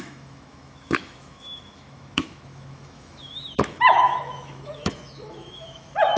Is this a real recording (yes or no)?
no